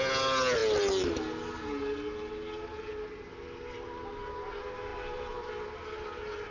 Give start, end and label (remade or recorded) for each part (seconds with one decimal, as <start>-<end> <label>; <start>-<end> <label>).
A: 0.0-6.5 recorded